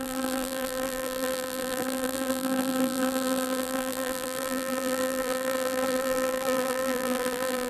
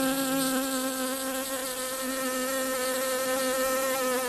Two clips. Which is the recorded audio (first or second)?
second